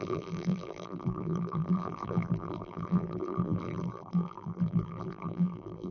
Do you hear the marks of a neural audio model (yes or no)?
yes